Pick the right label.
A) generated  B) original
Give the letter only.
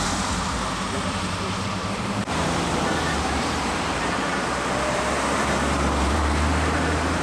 A